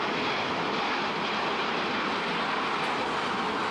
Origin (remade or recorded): recorded